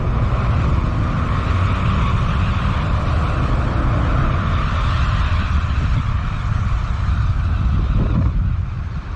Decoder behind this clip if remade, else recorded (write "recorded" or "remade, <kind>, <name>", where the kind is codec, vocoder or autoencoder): recorded